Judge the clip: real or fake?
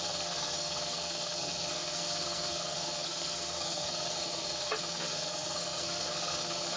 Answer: fake